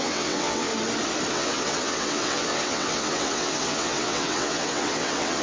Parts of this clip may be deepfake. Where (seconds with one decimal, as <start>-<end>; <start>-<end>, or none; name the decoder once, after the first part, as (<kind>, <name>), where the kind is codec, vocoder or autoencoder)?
0.0-0.7 (vocoder, WaveNeXt); 1.3-5.4